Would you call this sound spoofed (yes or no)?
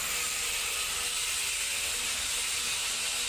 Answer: no